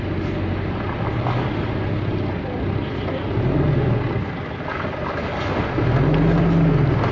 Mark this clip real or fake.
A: real